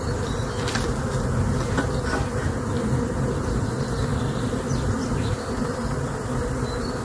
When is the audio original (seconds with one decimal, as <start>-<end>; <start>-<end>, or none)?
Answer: 0.0-7.0